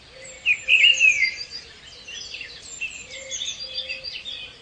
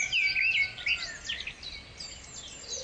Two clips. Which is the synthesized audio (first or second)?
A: first